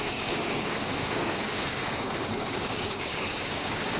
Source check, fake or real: fake